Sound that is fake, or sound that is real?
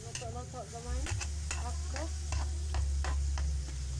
real